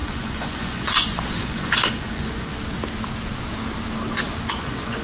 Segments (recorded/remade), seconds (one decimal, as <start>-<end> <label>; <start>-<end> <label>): 0.0-2.5 remade; 2.5-4.5 recorded; 4.5-5.0 remade